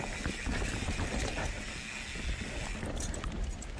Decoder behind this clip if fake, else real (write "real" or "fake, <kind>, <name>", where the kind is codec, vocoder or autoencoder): real